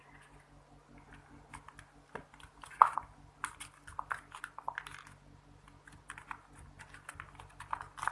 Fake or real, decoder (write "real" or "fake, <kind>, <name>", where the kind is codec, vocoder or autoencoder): real